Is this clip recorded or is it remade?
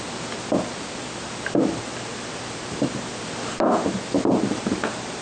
recorded